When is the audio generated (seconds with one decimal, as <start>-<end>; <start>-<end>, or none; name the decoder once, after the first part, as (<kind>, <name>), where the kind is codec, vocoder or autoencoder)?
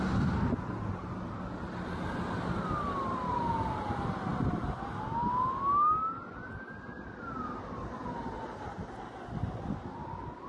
none